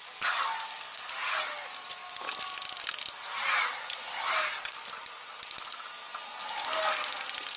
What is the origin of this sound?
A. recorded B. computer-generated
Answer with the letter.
A